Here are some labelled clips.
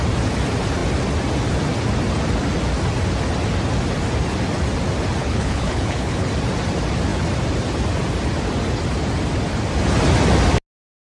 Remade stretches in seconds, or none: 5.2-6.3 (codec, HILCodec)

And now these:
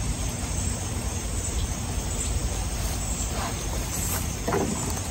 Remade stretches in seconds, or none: none

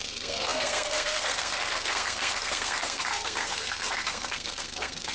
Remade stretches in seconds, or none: 0.0-5.1 (codec, SNAC)

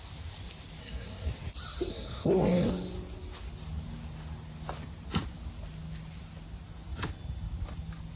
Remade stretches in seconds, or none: 0.8-1.3 (codec, SNAC); 1.9-2.7

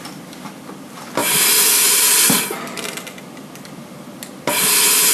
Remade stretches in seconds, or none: none

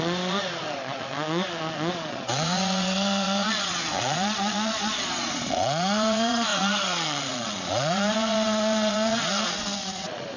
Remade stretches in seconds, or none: 0.0-10.4 (vocoder, Vocos)

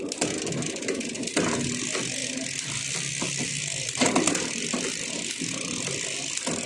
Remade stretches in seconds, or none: none